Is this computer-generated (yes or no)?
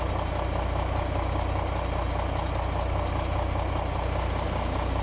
no